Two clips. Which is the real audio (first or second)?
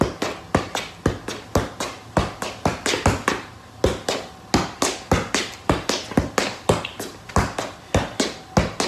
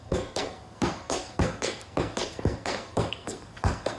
first